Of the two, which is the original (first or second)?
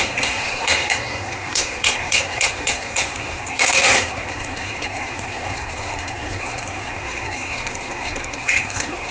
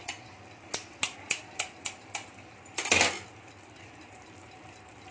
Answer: second